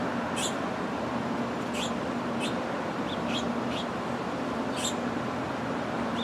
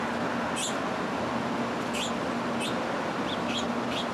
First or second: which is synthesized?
first